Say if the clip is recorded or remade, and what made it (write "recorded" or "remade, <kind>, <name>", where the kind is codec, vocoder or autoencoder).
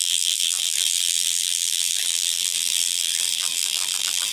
remade, vocoder, BigVGAN v2